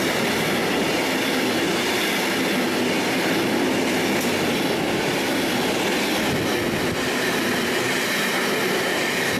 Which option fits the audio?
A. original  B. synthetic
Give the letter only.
A